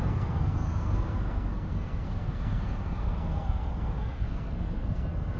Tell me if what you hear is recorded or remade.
remade